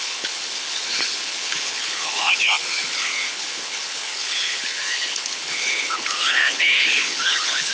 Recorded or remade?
remade